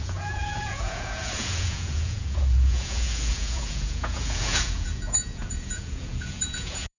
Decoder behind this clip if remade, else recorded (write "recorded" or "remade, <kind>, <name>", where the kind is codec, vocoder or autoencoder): remade, vocoder, Vocos